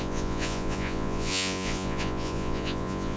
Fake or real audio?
fake